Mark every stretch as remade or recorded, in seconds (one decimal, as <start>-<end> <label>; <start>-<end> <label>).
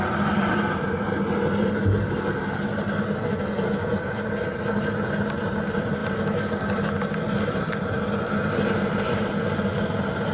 0.0-10.3 recorded